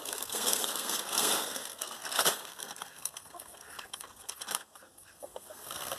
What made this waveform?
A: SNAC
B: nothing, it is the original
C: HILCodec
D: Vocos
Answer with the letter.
A